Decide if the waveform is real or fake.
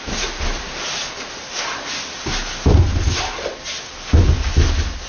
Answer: real